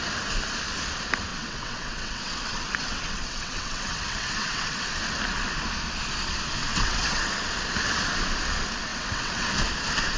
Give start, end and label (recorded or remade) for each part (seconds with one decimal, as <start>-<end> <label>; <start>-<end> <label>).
0.0-1.3 recorded; 1.3-4.8 remade; 4.8-6.7 recorded; 6.7-7.3 remade; 7.3-8.9 recorded; 8.9-9.5 remade; 9.5-10.2 recorded